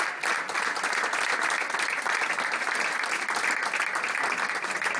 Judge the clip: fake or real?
real